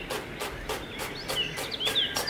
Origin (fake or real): real